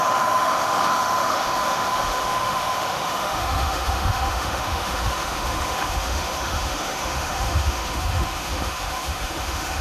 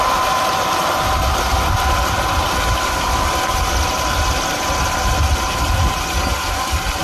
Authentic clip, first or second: second